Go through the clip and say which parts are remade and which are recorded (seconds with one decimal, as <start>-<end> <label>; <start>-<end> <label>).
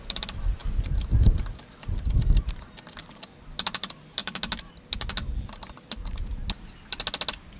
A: 0.0-7.6 recorded